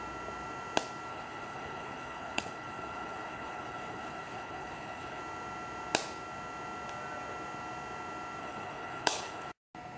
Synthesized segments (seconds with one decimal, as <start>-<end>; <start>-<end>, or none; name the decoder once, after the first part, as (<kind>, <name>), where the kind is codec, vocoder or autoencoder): 1.1-5.2 (codec, HILCodec); 8.4-9.5